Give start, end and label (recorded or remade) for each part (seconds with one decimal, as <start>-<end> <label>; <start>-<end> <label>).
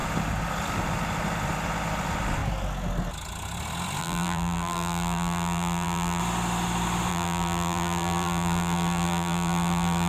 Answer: 0.0-4.0 recorded; 4.0-6.2 remade; 6.2-7.1 recorded; 7.1-10.1 remade